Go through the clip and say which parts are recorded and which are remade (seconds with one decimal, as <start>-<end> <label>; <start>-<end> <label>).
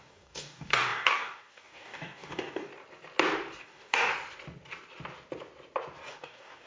0.0-2.7 remade; 2.7-3.6 recorded; 3.6-4.1 remade; 4.1-6.1 recorded; 6.1-6.7 remade